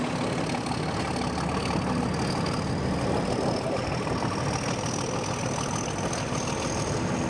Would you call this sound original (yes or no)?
yes